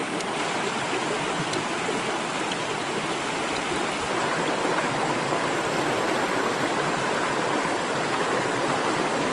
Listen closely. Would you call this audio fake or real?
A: real